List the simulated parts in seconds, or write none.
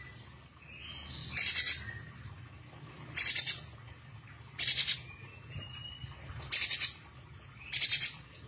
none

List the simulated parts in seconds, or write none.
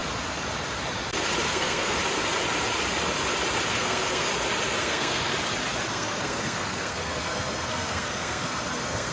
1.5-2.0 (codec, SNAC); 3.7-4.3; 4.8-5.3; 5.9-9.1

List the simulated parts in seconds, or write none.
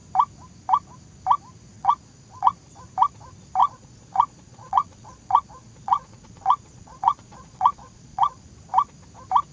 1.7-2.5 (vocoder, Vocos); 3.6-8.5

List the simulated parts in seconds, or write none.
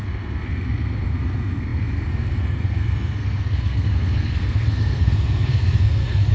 0.0-6.3 (codec, SNAC)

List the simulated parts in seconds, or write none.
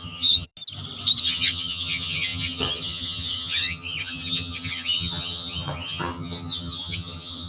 0.0-0.5 (vocoder, HiFi-GAN); 1.2-7.5